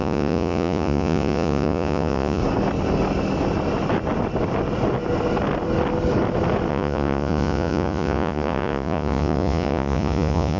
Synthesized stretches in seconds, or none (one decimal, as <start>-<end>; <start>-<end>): 0.0-2.4; 6.7-10.6